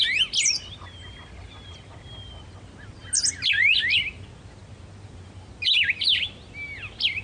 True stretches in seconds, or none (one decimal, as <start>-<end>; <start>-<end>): 0.0-7.2